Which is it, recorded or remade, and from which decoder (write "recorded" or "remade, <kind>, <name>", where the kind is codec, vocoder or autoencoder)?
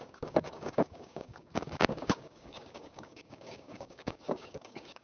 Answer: remade, codec, DAC